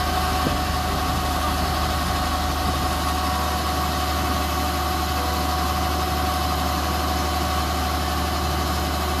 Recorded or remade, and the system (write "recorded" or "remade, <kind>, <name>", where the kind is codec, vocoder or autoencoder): recorded